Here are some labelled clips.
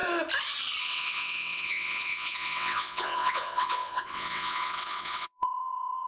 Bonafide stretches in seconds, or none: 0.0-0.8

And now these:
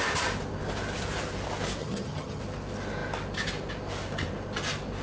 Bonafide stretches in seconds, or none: 0.0-1.8; 2.4-5.0

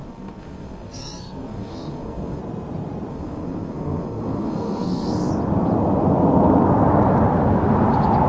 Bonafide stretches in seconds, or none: 2.4-3.1; 5.3-8.3